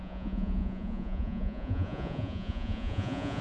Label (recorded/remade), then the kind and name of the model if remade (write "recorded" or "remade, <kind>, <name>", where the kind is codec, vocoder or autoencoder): remade, vocoder, Vocos